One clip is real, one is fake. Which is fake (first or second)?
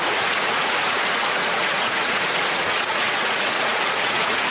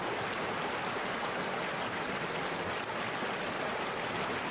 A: first